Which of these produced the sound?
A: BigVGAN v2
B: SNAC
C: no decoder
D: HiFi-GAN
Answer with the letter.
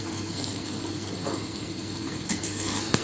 B